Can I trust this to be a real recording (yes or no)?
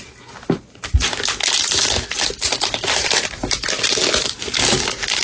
yes